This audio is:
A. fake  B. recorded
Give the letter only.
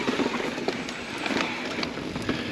B